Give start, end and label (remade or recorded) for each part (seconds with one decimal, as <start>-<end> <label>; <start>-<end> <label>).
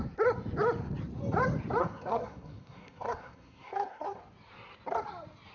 0.0-1.8 recorded; 1.8-4.2 remade; 4.2-5.5 recorded